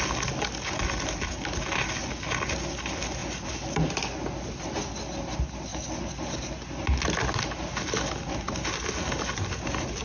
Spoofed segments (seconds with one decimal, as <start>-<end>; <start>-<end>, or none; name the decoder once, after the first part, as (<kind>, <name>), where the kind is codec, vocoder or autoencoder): none